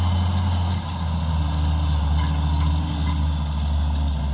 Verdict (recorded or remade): recorded